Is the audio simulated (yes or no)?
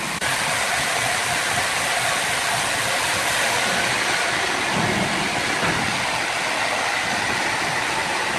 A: no